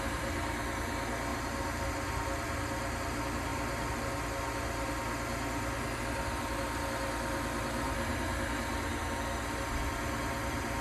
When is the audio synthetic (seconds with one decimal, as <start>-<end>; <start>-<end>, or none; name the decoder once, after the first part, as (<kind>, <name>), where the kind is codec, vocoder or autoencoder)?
1.3-1.8 (vocoder, BigVGAN v2); 8.9-9.4